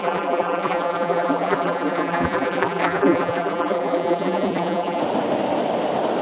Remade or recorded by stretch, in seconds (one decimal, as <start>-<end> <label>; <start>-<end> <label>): 0.0-5.0 remade; 5.0-6.2 recorded